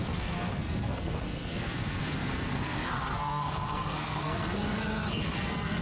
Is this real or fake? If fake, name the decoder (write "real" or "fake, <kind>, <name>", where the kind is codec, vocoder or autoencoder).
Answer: fake, codec, SNAC